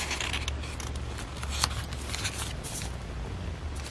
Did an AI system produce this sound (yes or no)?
no